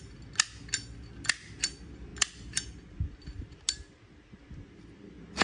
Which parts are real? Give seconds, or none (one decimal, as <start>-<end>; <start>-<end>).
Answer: 0.0-5.4